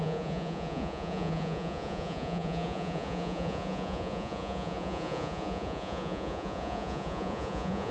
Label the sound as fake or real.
fake